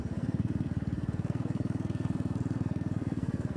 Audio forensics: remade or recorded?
remade